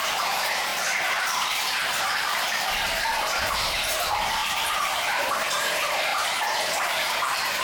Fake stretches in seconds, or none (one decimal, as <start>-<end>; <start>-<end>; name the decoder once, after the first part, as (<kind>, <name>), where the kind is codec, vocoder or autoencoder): 0.0-7.6 (vocoder, BigVGAN v2)